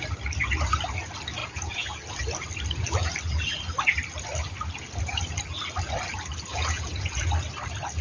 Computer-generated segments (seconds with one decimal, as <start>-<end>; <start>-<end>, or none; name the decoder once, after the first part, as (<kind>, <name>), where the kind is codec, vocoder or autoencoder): 1.4-2.0 (vocoder, Vocos); 6.5-7.3